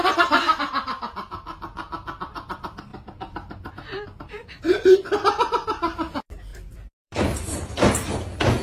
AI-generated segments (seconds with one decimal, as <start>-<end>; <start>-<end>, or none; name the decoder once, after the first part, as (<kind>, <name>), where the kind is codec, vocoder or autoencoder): 0.0-0.6 (vocoder, BigVGAN v2); 2.9-3.7; 4.4-5.5; 6.5-7.7